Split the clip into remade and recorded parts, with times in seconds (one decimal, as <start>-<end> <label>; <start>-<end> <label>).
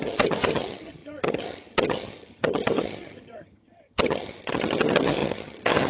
0.0-5.9 remade